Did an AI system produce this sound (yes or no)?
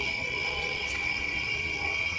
yes